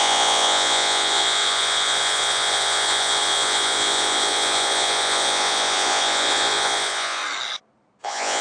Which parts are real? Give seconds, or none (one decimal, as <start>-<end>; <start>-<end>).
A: 7.2-8.0